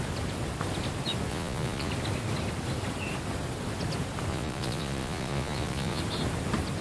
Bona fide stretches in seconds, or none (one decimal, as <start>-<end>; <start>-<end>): 0.0-1.3; 1.9-4.3; 6.0-6.8